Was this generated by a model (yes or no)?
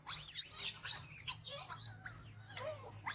no